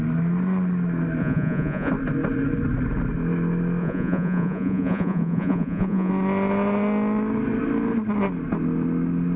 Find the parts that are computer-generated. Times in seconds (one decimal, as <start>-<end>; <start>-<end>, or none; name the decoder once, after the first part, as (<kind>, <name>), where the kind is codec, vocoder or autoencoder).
1.2-1.9 (vocoder, Vocos); 3.8-6.1